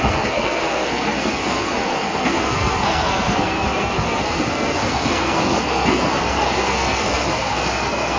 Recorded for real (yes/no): no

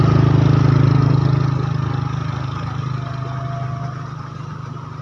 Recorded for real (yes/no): yes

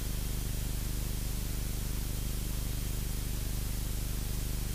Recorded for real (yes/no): yes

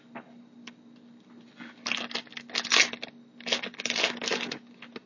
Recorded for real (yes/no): yes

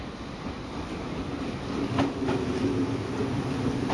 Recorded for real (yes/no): yes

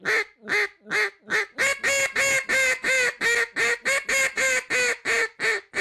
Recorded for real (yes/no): yes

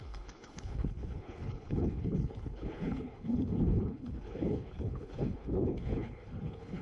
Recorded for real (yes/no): no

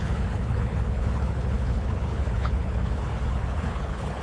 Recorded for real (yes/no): no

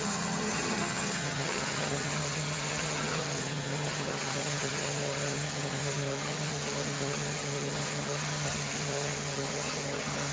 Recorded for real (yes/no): no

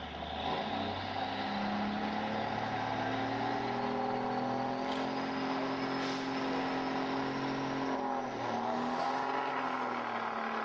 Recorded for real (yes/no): yes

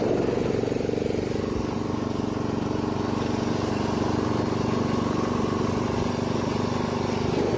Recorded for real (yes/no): yes